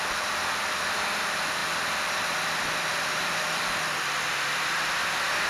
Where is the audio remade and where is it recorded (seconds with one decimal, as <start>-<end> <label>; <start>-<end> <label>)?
0.0-1.6 recorded; 1.6-4.0 remade; 4.0-5.5 recorded